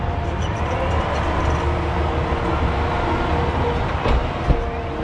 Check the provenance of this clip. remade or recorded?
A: recorded